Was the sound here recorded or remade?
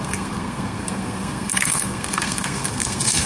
remade